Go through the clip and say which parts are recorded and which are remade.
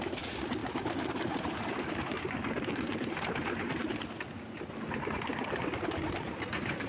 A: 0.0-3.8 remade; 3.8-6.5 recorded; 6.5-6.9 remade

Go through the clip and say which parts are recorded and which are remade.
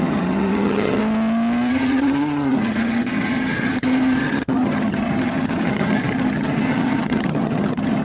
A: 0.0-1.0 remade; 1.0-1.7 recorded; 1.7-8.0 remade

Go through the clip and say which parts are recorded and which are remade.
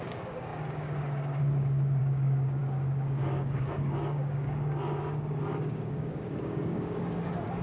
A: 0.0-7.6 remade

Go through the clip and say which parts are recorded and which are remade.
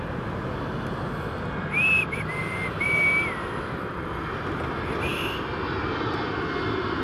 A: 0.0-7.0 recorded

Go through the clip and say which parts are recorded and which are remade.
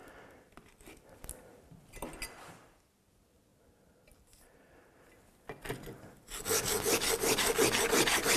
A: 0.0-8.4 recorded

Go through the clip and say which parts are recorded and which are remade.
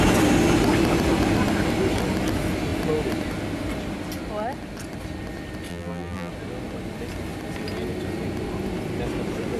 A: 0.0-5.7 recorded; 5.7-6.3 remade; 6.3-9.6 recorded